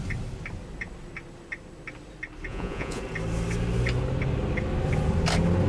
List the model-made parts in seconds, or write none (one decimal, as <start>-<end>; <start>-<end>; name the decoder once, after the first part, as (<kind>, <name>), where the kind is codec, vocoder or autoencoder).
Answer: 2.5-3.0 (vocoder, Vocos)